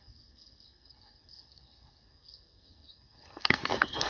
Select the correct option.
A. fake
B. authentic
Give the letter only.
A